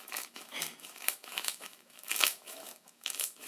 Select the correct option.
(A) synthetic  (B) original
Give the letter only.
A